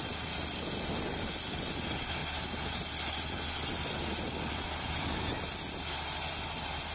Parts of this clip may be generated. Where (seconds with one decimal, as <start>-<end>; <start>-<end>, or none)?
none